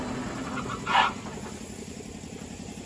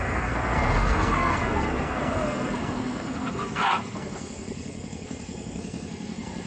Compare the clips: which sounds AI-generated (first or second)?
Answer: second